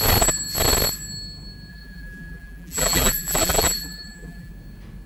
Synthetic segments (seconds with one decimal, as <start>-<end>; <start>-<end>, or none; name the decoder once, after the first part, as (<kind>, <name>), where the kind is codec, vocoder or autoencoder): 1.7-4.5 (vocoder, BigVGAN v2)